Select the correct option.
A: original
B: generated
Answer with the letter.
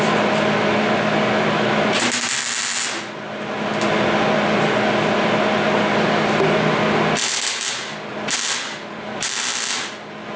A